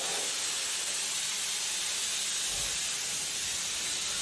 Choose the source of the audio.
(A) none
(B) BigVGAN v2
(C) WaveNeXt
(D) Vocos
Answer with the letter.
A